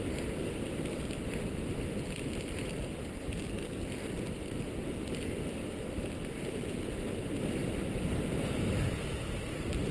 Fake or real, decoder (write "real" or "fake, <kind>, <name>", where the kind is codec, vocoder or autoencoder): real